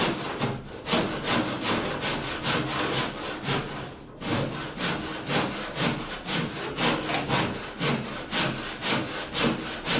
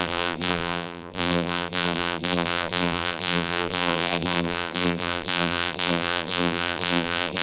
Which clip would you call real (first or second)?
first